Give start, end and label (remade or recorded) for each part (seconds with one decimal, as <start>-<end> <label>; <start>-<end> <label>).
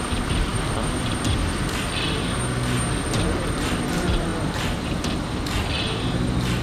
0.0-6.6 recorded